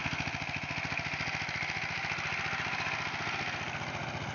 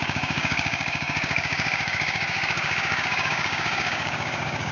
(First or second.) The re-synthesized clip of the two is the second